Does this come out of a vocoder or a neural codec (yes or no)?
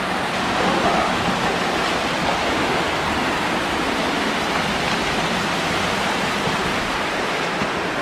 no